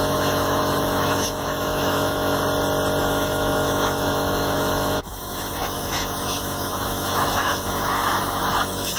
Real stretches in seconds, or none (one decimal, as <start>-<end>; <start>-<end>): 2.4-3.0